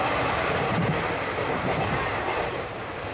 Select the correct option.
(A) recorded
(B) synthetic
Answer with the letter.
A